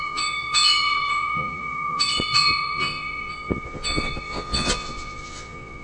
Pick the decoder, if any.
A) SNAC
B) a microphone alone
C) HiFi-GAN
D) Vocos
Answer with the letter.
D